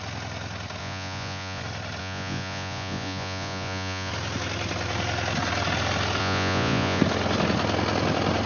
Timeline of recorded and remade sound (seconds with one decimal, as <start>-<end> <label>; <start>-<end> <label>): 0.0-0.8 recorded; 0.8-1.6 remade; 1.6-2.0 recorded; 2.0-4.1 remade; 4.1-6.2 recorded; 6.2-7.0 remade; 7.0-8.5 recorded